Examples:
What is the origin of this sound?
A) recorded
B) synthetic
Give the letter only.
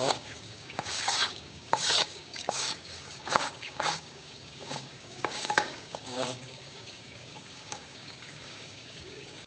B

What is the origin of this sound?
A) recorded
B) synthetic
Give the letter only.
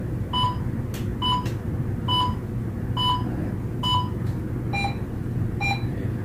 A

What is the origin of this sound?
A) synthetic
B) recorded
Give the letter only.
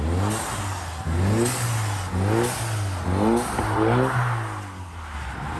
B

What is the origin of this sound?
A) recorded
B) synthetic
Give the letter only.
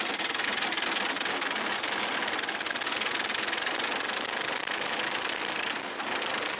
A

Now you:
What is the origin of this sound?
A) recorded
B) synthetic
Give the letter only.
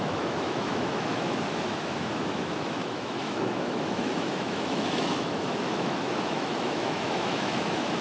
B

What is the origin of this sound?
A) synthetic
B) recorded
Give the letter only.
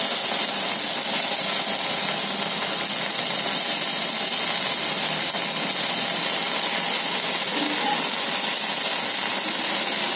B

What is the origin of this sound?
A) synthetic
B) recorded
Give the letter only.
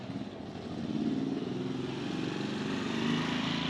B